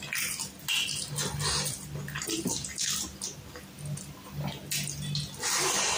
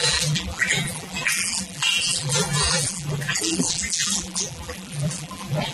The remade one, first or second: second